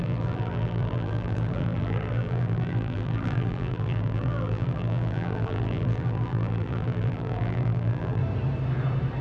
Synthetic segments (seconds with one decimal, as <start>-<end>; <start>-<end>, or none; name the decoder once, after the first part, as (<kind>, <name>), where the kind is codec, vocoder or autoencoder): 0.0-8.2 (vocoder, BigVGAN v2)